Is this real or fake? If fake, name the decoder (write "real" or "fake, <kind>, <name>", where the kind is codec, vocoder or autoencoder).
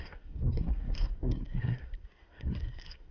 fake, codec, SNAC